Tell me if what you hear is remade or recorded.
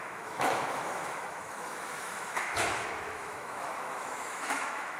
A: remade